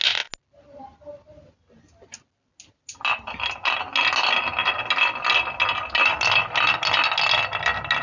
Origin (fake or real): real